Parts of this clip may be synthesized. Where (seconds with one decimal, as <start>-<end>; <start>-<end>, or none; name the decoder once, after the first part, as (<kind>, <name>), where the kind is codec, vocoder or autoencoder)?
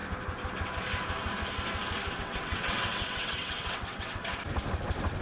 2.1-4.2 (vocoder, WaveNeXt)